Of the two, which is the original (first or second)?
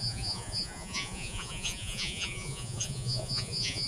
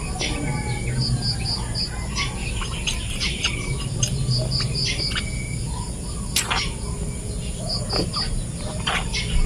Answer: second